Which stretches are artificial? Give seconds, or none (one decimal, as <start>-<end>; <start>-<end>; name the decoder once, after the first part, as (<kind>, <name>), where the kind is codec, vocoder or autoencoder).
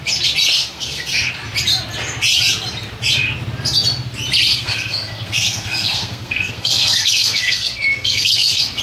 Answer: 0.6-1.3 (codec, SNAC); 4.5-8.8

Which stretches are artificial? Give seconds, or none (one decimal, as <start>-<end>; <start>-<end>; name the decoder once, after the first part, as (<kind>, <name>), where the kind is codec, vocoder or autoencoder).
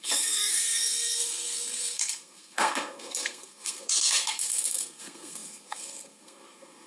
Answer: 0.0-6.9 (codec, SNAC)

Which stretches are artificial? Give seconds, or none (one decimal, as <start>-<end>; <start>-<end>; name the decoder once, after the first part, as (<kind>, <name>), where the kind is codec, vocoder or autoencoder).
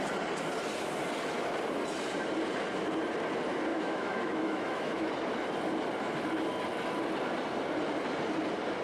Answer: 3.7-5.1 (autoencoder, DAC-VAE)